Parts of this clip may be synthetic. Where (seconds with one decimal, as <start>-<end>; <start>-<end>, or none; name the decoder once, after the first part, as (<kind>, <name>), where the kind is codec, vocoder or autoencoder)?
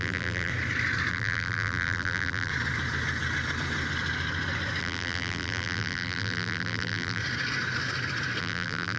0.0-0.5 (vocoder, BigVGAN v2); 1.1-2.5; 4.8-7.2; 8.4-9.0